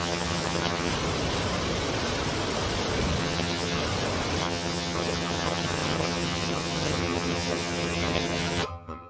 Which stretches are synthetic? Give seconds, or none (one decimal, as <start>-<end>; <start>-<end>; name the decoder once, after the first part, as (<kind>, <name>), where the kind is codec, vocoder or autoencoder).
0.0-0.9 (vocoder, HiFi-GAN); 3.2-3.8; 4.4-9.1